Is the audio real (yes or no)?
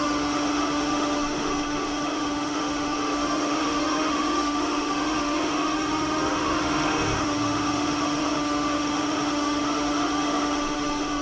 no